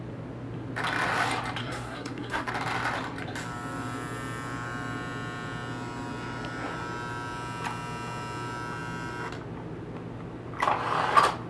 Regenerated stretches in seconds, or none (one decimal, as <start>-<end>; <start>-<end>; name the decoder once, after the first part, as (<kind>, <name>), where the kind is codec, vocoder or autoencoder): 1.6-2.5 (codec, SNAC)